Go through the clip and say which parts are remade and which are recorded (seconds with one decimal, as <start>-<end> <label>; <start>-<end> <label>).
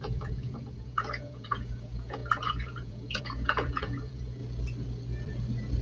0.0-4.4 remade; 4.4-5.8 recorded